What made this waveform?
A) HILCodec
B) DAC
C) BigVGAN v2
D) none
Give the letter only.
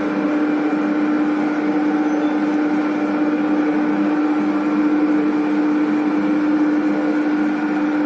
D